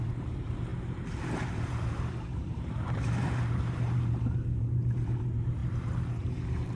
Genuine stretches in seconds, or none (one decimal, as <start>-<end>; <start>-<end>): none